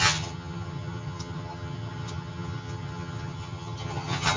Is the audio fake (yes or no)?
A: yes